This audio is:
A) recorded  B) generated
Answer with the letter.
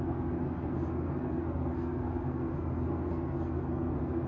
B